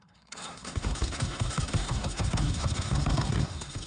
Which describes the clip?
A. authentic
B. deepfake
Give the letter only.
B